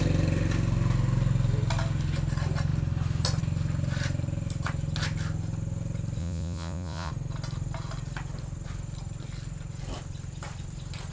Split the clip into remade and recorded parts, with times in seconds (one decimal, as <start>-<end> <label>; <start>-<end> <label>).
0.0-6.2 recorded; 6.2-7.1 remade; 7.1-11.1 recorded